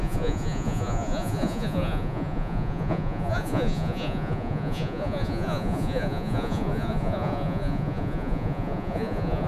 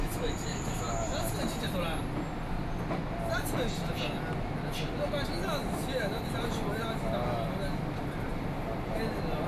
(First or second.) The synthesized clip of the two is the first